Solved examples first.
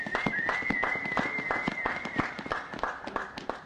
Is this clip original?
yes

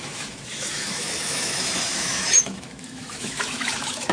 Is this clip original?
no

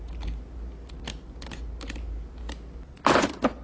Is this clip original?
yes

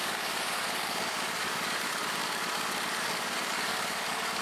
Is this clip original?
no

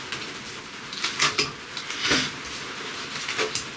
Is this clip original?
yes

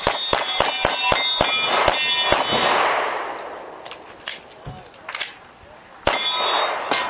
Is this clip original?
yes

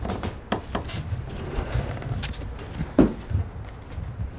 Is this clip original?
no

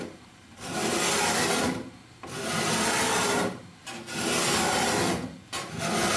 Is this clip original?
yes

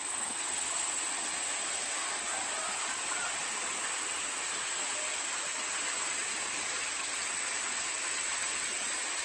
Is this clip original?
yes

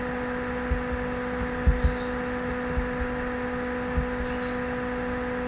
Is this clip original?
yes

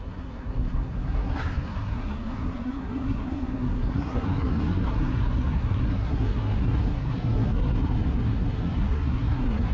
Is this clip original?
no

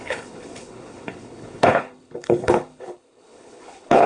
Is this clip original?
no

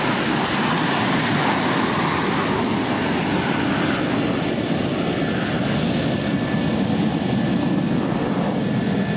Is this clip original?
yes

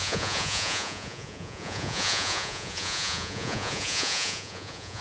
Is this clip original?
no